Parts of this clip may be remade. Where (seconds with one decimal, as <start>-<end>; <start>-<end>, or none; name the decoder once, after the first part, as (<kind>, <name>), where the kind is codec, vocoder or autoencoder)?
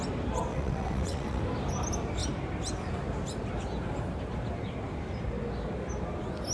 0.5-1.4 (vocoder, WaveNeXt)